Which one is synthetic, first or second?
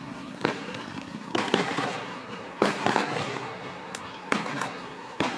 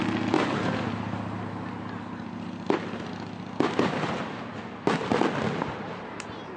first